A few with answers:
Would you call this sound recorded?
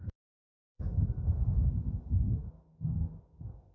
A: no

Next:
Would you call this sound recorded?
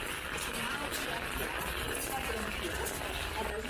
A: yes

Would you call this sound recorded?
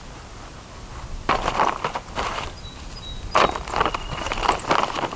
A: yes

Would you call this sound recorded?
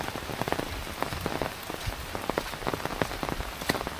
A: yes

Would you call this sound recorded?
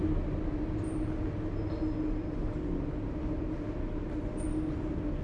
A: yes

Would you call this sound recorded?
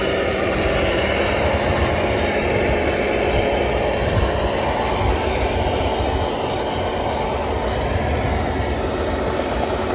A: yes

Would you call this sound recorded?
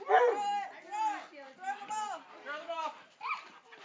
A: yes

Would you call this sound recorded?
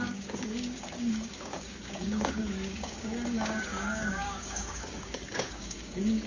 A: no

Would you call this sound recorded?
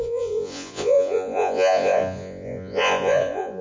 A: no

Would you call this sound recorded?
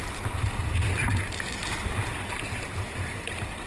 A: yes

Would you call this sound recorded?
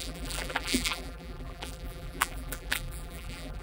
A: no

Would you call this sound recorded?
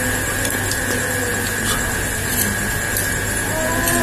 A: yes